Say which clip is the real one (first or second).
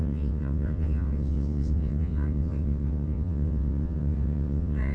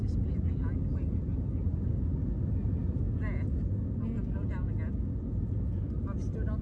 second